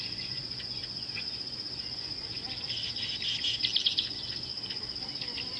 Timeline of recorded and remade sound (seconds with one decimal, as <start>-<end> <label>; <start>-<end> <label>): 0.0-2.4 remade; 2.4-3.8 recorded; 3.8-4.5 remade; 4.5-5.6 recorded